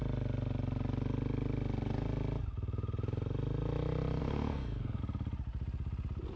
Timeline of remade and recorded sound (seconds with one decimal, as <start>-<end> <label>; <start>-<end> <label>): 0.0-4.2 recorded; 4.2-5.0 remade; 5.0-6.4 recorded